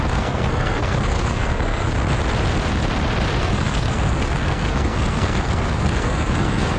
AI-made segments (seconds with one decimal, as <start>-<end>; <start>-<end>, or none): 0.0-1.9; 3.4-6.8